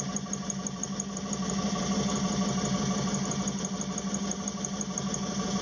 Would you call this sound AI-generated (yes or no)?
no